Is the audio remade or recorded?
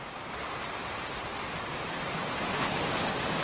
recorded